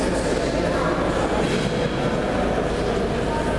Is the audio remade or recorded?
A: recorded